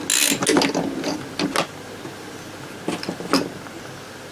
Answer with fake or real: real